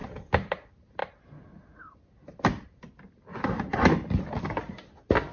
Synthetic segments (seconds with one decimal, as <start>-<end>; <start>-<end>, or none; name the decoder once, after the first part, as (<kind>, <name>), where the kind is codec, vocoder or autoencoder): none